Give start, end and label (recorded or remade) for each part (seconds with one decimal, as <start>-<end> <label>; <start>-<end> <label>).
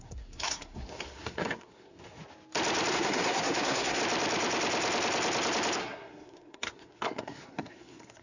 0.0-2.2 remade; 2.2-2.9 recorded; 2.9-4.0 remade; 4.0-5.8 recorded; 5.8-8.2 remade